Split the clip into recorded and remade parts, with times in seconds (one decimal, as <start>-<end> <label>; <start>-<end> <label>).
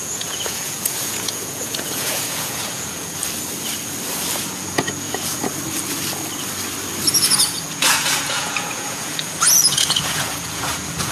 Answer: 0.0-3.2 remade; 3.2-4.4 recorded; 4.4-5.4 remade; 5.4-7.1 recorded; 7.1-11.1 remade